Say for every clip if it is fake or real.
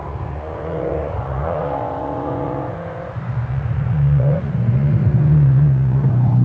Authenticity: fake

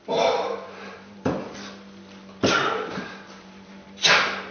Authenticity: real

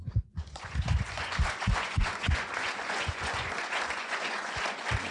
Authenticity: fake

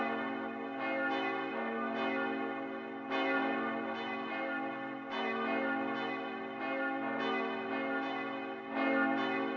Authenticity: real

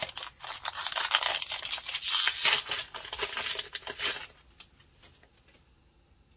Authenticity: real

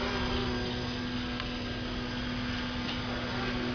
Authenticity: real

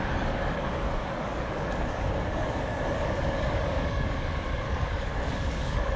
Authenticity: fake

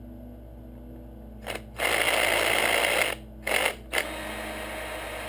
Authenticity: real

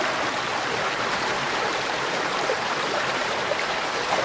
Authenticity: fake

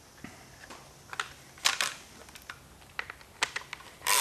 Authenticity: real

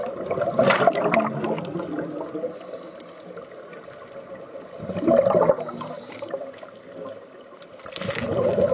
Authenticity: real